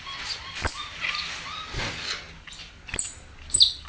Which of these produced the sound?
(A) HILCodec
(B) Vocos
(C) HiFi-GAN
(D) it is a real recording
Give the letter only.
D